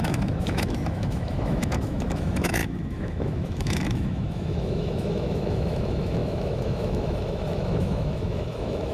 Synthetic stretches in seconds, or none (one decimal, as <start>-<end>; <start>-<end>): 0.0-8.9